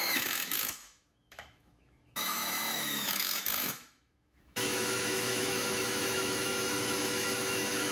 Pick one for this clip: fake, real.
fake